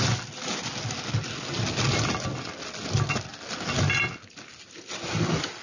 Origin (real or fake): real